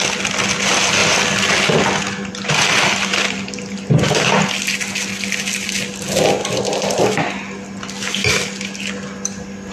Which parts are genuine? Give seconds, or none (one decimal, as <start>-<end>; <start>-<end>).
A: 0.0-9.7